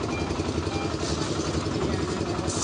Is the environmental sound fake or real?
real